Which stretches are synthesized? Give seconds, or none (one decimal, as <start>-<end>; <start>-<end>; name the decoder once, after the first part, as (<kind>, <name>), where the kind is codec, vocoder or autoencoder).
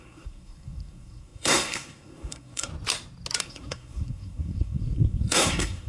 0.0-2.7 (codec, SNAC); 3.4-5.9